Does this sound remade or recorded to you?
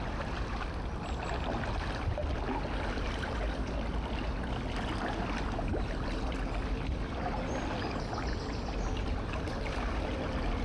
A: recorded